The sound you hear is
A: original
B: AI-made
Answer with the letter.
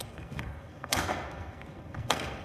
B